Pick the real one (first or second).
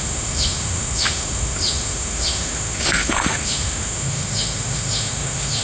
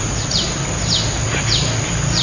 second